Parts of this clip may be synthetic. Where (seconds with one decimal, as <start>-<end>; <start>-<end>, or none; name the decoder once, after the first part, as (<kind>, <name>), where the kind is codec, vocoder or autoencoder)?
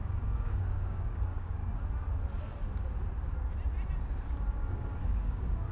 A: 0.0-1.6 (codec, DAC); 5.0-5.7